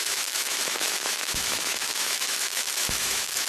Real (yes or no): no